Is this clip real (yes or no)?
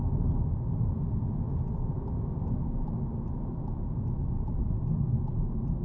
yes